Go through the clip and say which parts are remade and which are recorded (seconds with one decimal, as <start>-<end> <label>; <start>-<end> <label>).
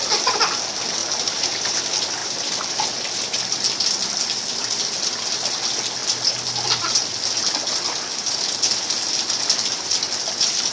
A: 0.0-1.0 recorded; 1.0-1.8 remade; 1.8-2.2 recorded; 2.2-2.7 remade; 2.7-10.7 recorded